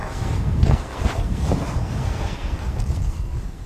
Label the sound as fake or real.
fake